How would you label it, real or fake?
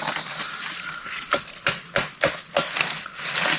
real